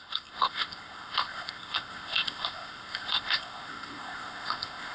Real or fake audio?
fake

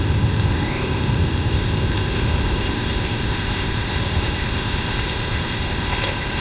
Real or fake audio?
fake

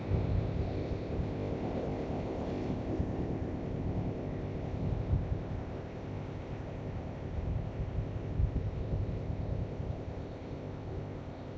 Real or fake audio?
fake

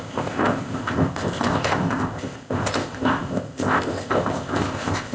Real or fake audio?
fake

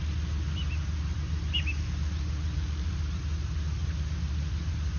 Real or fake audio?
real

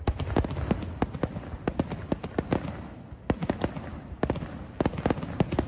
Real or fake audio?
real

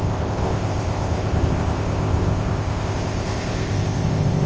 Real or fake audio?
fake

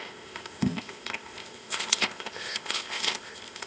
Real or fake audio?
fake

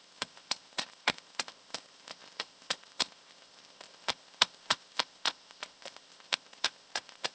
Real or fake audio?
fake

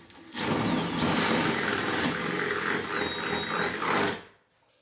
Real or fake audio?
real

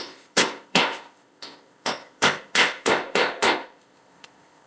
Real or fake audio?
fake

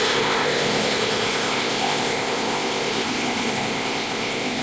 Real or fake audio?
fake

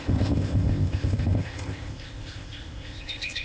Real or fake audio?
fake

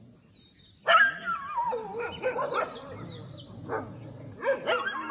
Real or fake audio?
real